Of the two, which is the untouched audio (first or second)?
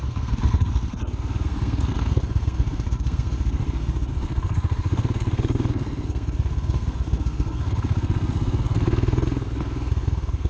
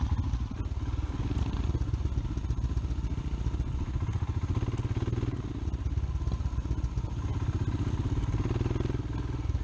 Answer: second